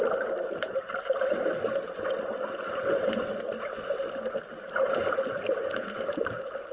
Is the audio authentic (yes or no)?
yes